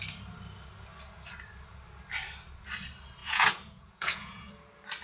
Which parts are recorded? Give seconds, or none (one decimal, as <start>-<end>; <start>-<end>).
0.0-3.2; 4.5-5.0